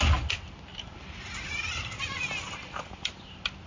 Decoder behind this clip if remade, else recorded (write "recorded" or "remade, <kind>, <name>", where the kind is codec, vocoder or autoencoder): recorded